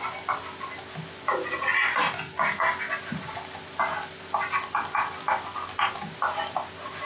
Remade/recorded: recorded